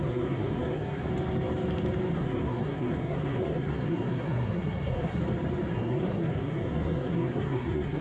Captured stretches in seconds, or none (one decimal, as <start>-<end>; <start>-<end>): 1.1-2.1; 5.2-5.7